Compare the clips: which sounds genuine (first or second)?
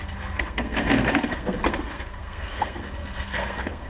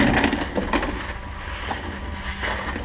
second